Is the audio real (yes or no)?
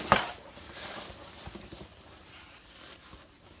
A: yes